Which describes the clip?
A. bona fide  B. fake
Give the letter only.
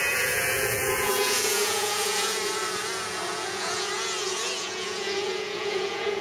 B